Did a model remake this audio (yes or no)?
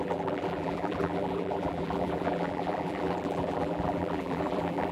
yes